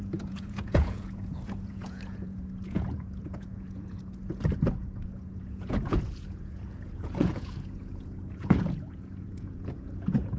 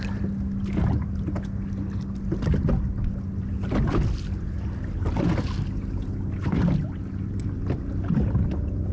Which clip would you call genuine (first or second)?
second